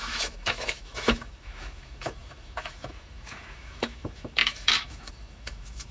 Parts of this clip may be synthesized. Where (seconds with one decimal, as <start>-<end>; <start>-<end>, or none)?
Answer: 0.0-5.9